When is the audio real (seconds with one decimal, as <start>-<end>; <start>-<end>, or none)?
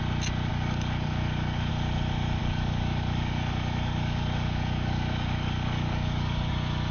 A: 0.0-0.5; 1.7-2.4; 6.5-6.9